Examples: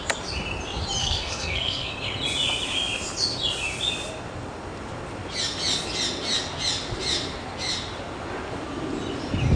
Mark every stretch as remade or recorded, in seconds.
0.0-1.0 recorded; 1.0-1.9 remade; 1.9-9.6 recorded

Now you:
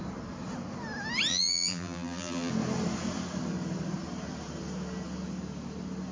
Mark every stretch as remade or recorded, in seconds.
0.0-1.3 recorded; 1.3-2.5 remade; 2.5-6.1 recorded

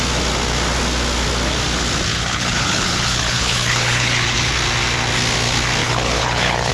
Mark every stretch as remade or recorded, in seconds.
0.0-2.1 recorded; 2.1-4.5 remade; 4.5-5.8 recorded; 5.8-6.7 remade

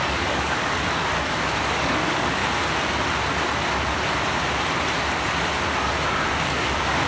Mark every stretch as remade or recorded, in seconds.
0.0-2.4 remade; 2.4-6.1 recorded; 6.1-7.1 remade

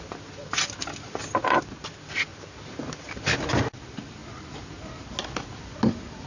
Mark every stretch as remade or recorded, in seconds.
0.0-2.3 recorded; 2.3-3.0 remade; 3.0-6.3 recorded

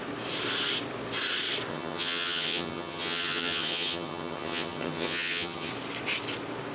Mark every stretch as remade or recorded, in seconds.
0.0-1.7 recorded; 1.7-5.7 remade; 5.7-6.7 recorded